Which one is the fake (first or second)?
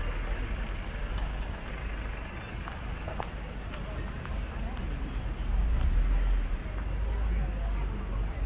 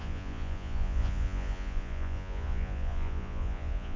second